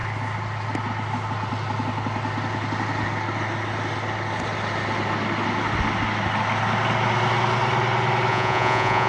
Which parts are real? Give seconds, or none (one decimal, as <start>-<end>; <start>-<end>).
0.0-8.3